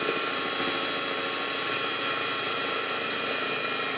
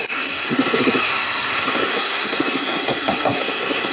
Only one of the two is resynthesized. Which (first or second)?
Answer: second